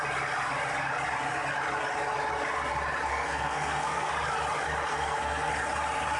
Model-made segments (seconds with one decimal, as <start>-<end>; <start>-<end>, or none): 3.1-4.1; 4.9-5.5